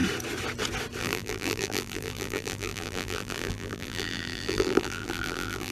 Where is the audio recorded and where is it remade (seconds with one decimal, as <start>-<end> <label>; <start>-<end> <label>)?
0.0-1.0 recorded; 1.0-5.7 remade